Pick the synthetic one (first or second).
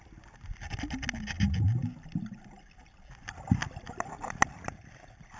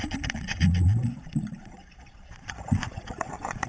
second